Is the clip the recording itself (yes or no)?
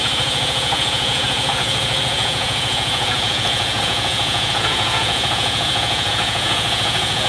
no